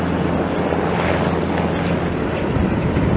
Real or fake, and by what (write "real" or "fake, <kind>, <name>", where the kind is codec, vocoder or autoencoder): real